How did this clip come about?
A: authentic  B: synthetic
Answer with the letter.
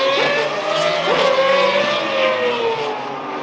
A